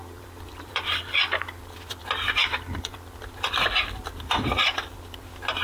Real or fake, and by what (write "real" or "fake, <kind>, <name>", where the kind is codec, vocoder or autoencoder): fake, vocoder, BigVGAN v2